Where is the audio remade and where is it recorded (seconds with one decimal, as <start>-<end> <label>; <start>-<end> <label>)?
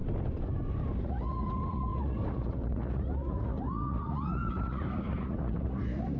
0.0-1.0 recorded; 1.0-6.2 remade